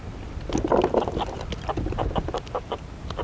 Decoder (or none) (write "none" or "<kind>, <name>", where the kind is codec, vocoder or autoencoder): none